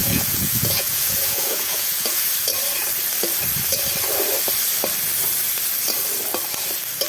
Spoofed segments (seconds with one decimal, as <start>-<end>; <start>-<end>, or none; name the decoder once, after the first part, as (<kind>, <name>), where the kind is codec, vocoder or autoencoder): 0.0-2.3 (vocoder, Vocos)